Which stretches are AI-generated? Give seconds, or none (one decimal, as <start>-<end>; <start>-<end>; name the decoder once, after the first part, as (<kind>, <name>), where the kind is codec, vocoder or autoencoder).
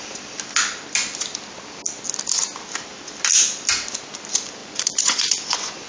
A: 4.6-5.9 (vocoder, Vocos)